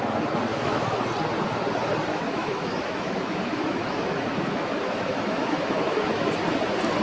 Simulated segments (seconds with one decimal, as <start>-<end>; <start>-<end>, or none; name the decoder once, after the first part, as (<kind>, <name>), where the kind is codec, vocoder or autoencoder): 0.5-1.0 (autoencoder, DAC-VAE); 2.1-6.3

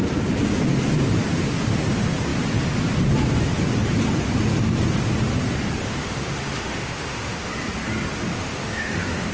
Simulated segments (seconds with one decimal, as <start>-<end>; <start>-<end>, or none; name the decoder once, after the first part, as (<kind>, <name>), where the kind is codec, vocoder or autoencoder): 5.8-7.5 (autoencoder, DAC-VAE); 8.3-9.3

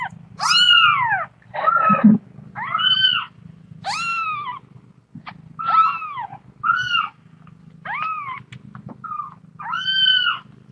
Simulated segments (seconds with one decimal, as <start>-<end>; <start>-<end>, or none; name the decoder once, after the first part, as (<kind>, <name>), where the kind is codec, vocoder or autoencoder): none

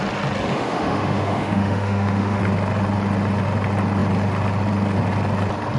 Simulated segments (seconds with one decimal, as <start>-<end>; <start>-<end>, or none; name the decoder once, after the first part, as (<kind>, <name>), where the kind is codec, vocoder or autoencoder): 0.5-2.4 (autoencoder, DAC-VAE)

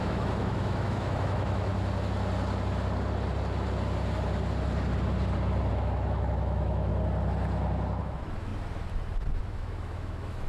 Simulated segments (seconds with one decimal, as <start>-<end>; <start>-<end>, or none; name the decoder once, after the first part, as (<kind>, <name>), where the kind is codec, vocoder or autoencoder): 0.0-1.7 (autoencoder, DAC-VAE); 5.7-6.9; 8.0-8.5; 9.4-10.5

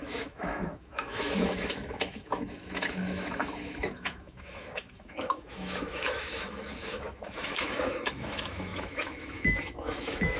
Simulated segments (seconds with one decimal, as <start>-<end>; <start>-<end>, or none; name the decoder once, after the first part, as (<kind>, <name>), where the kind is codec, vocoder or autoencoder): 0.0-10.4 (autoencoder, DAC-VAE)

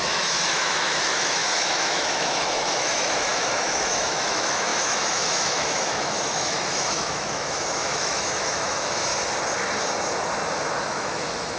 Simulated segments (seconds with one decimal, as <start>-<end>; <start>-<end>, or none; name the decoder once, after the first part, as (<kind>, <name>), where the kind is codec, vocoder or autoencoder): 0.0-9.1 (autoencoder, DAC-VAE); 10.9-11.6

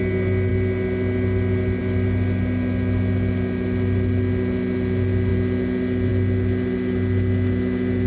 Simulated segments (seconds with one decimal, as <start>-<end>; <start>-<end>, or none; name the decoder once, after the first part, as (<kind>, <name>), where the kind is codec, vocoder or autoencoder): none